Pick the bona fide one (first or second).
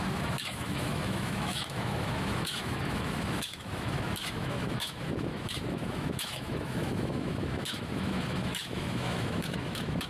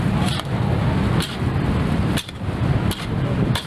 second